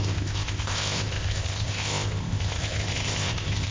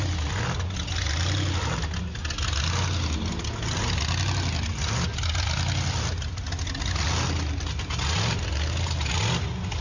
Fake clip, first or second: first